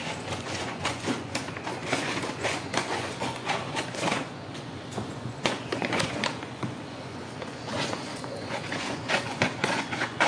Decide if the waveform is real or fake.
fake